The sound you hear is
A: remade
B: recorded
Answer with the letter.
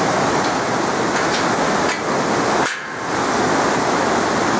B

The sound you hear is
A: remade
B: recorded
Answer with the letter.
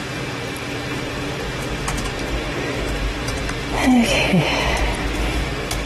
A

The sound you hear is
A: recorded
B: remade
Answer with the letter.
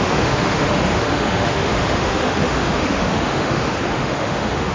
B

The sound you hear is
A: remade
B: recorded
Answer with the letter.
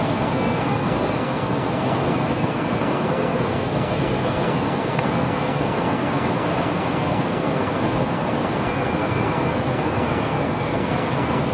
A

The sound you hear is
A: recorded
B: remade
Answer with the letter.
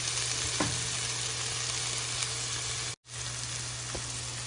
A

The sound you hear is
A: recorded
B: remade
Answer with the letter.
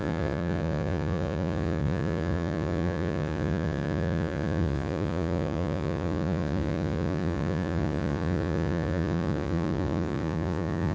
B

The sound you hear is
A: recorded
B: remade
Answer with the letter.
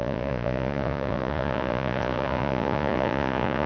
B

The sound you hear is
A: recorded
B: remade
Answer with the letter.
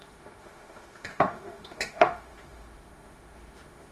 B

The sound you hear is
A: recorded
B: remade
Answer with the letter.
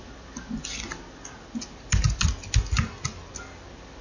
A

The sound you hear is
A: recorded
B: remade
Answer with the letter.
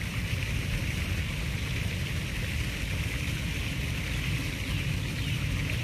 A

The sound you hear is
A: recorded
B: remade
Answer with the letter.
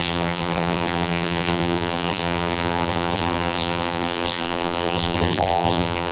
B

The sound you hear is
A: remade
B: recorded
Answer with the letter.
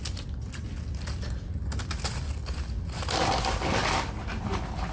B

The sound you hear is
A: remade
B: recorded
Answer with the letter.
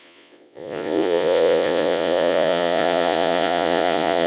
A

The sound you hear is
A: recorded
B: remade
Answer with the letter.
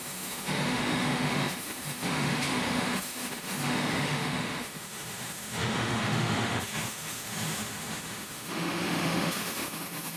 B